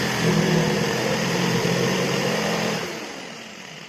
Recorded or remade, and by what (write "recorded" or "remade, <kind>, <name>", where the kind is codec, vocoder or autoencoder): remade, vocoder, BigVGAN v2